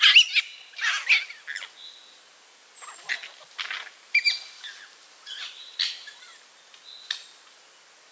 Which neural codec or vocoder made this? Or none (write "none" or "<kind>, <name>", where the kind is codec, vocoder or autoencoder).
none